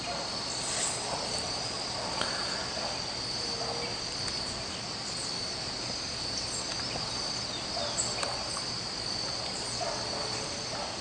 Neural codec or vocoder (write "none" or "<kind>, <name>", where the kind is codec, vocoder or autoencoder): none